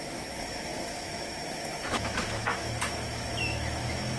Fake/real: fake